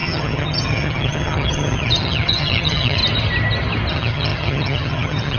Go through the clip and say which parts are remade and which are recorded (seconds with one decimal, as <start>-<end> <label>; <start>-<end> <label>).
0.0-3.0 remade; 3.0-3.9 recorded; 3.9-5.4 remade